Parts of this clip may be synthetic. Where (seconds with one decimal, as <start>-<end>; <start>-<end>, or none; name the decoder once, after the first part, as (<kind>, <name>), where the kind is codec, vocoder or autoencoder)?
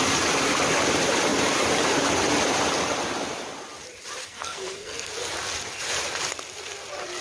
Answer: 4.2-5.1 (codec, SNAC)